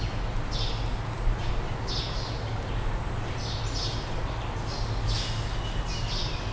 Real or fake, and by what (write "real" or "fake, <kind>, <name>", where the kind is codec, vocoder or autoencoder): real